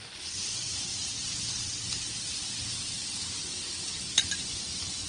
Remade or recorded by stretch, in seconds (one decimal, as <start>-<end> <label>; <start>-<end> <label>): 0.0-0.9 remade; 0.9-4.0 recorded; 4.0-5.1 remade